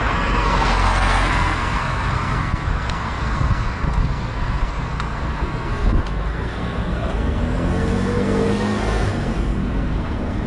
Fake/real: fake